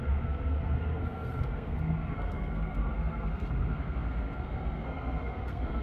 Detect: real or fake fake